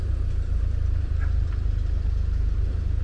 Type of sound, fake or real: fake